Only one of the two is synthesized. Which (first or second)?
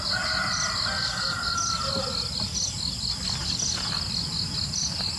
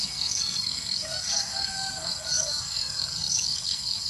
second